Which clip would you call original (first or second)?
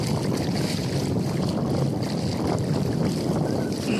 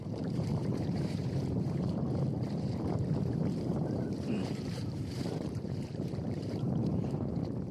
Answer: first